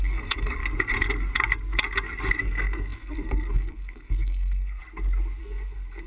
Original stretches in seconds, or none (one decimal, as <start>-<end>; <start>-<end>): 0.6-2.4; 4.8-5.4